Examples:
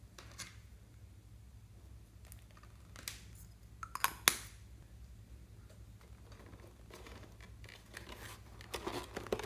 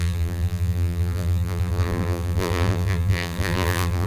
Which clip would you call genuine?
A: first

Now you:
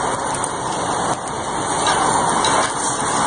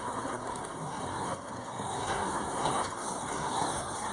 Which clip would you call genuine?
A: first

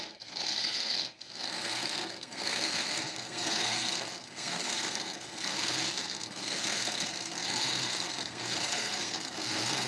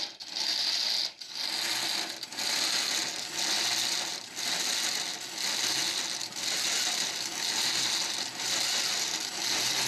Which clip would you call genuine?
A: second